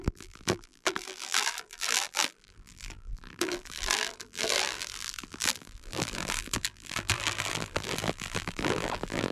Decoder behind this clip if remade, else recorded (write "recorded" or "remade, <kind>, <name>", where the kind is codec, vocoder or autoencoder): remade, vocoder, BigVGAN v2